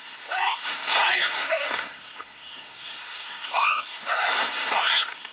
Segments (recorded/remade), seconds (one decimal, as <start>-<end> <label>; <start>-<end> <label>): 0.0-5.3 remade

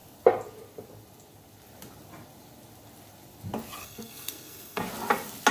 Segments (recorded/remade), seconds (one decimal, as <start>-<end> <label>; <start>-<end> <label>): 0.0-3.8 recorded; 3.8-4.8 remade; 4.8-5.5 recorded